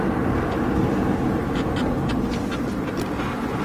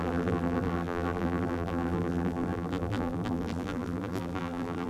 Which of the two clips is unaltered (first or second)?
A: first